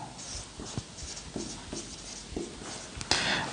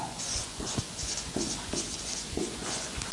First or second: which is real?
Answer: first